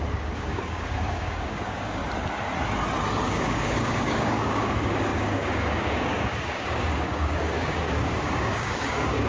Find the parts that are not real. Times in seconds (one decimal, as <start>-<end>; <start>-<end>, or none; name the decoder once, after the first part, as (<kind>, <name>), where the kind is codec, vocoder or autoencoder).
0.0-2.0 (codec, DAC); 3.2-9.3

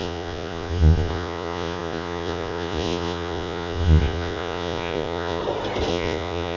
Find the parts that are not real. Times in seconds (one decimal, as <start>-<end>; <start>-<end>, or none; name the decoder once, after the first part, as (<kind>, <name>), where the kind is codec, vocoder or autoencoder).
0.0-5.4 (vocoder, Vocos); 5.9-6.6

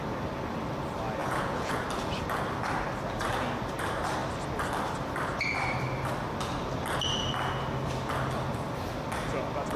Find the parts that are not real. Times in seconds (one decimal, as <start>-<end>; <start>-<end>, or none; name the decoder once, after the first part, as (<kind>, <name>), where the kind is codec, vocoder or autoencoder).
1.2-1.8 (vocoder, Vocos)

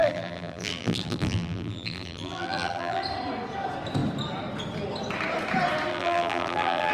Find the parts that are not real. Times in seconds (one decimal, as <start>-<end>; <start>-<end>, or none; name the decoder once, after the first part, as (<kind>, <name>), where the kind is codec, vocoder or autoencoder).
0.0-3.0 (vocoder, BigVGAN v2); 5.9-6.9

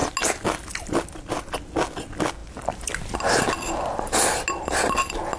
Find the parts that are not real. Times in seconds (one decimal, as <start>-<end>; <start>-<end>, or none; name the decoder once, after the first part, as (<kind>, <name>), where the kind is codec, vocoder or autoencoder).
none